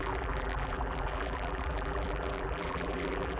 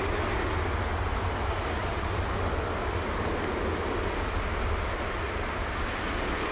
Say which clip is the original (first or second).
second